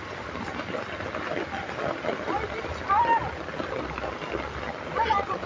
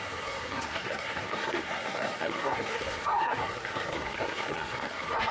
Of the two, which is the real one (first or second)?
first